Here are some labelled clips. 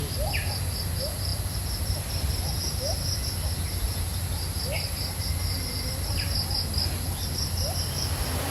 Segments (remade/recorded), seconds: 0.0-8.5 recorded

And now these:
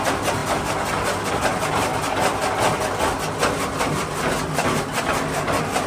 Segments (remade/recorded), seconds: 0.0-5.9 recorded

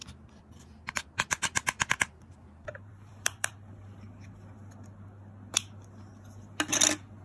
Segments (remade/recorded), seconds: 0.0-3.5 remade; 3.5-7.2 recorded

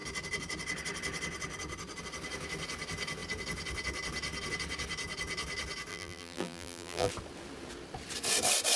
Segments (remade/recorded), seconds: 0.0-5.9 recorded; 5.9-7.1 remade; 7.1-8.8 recorded

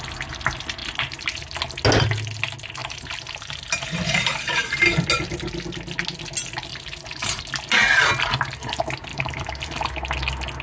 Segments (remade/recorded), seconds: 0.0-2.8 recorded; 2.8-4.7 remade; 4.7-6.7 recorded; 6.7-7.4 remade; 7.4-9.1 recorded; 9.1-9.8 remade; 9.8-10.6 recorded

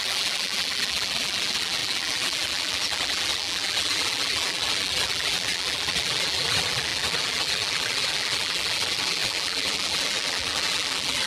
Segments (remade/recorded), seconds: 0.0-11.3 remade

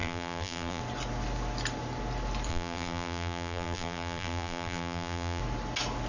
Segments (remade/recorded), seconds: 0.0-0.8 remade; 0.8-2.5 recorded; 2.5-5.4 remade; 5.4-6.1 recorded